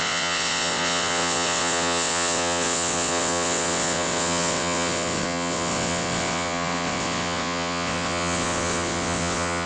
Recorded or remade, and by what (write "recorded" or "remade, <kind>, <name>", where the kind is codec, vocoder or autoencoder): remade, vocoder, WaveNeXt